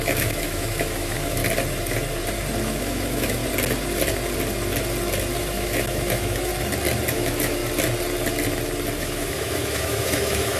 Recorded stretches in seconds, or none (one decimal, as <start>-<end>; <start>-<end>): 1.4-2.6; 3.4-5.4; 6.5-7.1; 7.6-9.0